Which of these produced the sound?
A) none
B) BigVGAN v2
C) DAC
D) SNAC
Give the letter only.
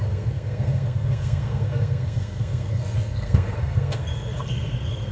D